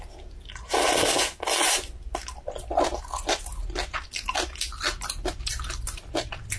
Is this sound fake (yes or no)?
no